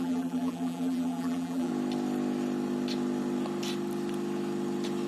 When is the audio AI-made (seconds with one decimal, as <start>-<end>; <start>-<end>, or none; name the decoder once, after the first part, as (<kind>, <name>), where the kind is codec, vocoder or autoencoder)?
0.0-1.7 (vocoder, BigVGAN v2)